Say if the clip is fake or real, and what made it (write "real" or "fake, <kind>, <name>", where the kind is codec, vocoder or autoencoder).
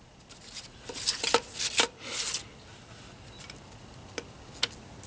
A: real